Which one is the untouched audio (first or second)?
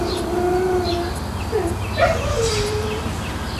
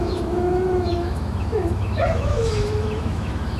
first